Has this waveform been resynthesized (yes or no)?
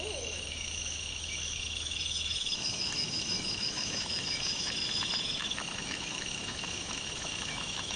yes